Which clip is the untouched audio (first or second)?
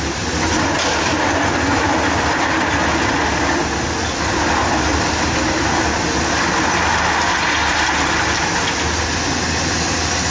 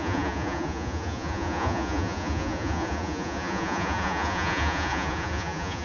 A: first